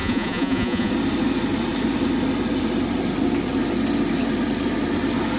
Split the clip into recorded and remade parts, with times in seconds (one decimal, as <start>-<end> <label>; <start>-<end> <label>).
0.0-0.9 remade; 0.9-5.4 recorded